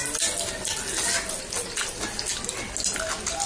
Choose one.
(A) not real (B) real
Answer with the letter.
B